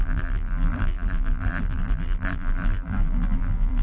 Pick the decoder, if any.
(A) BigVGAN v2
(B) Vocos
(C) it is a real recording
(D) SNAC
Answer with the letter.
A